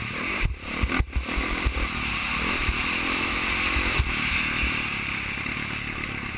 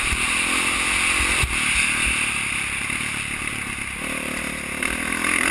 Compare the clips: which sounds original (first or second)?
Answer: second